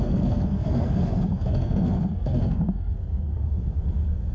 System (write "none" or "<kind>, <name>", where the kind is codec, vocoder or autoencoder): codec, SNAC